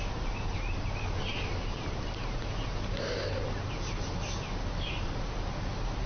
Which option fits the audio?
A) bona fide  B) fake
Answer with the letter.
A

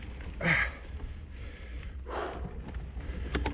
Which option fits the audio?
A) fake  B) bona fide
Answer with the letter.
B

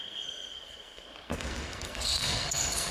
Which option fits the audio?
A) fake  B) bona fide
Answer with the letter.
A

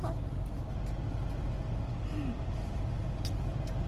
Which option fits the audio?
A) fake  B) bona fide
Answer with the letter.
B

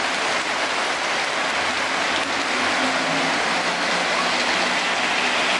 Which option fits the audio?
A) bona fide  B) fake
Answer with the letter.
A